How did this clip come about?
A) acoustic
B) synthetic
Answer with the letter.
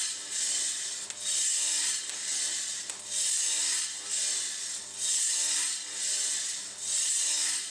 A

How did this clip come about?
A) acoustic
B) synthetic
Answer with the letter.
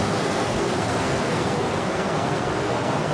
B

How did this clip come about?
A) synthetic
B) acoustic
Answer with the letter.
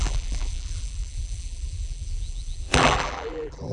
A